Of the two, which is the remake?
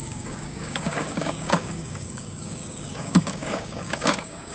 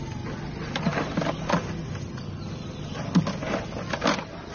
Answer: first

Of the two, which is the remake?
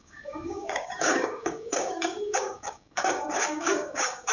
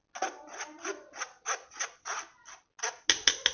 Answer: first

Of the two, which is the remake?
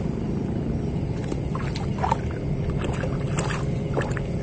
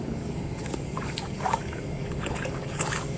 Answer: second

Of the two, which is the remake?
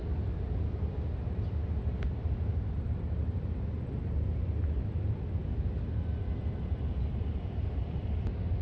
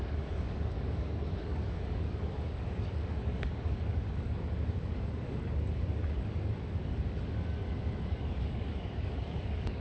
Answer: second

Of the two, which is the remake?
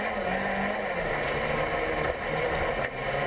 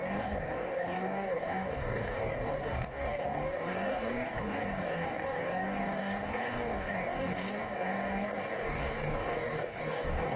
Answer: second